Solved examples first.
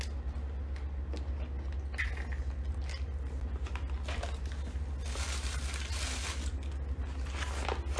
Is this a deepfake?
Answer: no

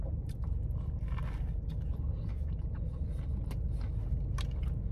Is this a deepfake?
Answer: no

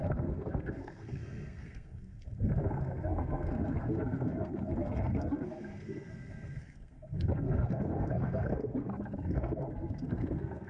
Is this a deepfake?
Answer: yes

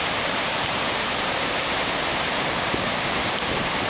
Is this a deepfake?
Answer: yes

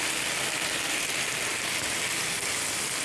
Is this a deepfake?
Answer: no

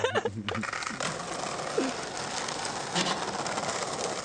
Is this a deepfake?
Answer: no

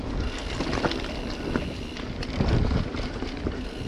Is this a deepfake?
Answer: no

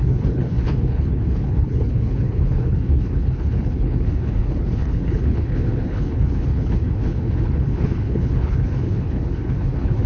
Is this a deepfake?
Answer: yes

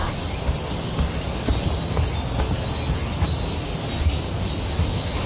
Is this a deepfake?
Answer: no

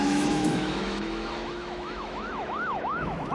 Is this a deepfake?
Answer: yes